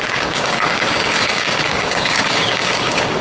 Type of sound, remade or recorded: remade